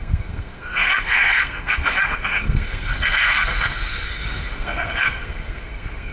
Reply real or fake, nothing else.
fake